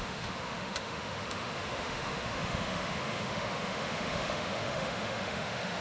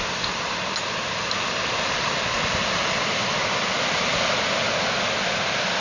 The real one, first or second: second